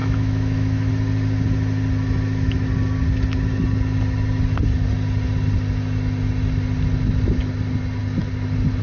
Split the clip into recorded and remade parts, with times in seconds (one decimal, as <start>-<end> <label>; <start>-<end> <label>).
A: 0.0-0.9 remade; 0.9-8.8 recorded